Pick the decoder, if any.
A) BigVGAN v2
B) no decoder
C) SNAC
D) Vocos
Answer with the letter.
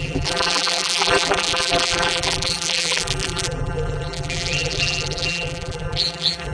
A